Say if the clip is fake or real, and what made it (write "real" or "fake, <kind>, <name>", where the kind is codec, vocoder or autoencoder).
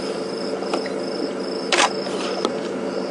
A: real